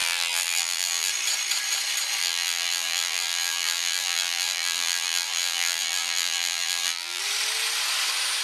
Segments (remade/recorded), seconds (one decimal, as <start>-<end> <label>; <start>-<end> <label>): 0.0-1.1 remade; 1.1-2.2 recorded; 2.2-7.2 remade; 7.2-8.4 recorded